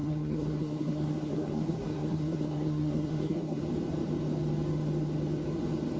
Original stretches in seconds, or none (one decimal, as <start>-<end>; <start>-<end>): 3.6-6.0